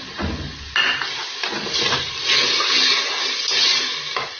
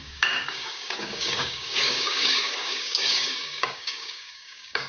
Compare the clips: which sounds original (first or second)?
first